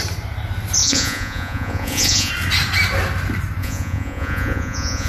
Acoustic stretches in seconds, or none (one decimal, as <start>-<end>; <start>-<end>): 0.0-0.8; 2.3-3.6